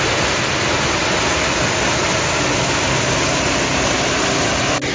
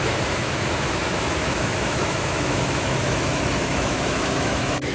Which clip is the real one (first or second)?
first